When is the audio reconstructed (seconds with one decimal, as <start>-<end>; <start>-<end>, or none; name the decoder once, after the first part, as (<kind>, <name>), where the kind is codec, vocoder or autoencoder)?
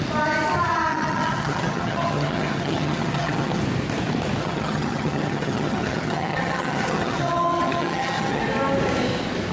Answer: 0.9-3.6 (vocoder, HiFi-GAN); 4.4-8.4